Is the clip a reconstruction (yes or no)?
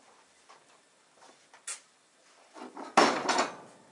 no